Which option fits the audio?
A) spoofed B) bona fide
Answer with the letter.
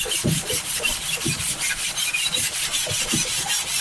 A